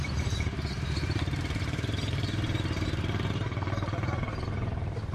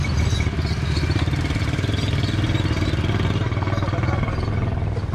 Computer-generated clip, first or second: first